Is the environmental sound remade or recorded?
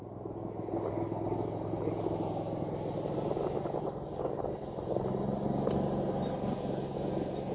recorded